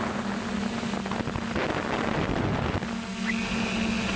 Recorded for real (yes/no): yes